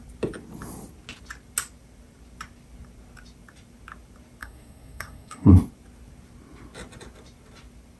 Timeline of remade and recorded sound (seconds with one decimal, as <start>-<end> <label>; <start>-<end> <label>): 0.0-4.4 recorded; 4.4-5.5 remade; 5.5-8.0 recorded